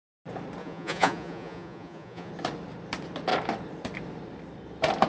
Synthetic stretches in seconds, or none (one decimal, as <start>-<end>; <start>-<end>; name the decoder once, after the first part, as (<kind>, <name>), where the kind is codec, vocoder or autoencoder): 0.6-2.3 (vocoder, Vocos)